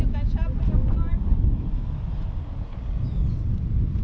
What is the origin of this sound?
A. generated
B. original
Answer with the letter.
B